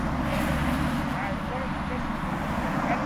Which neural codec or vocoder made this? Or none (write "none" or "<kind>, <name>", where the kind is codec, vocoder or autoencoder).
none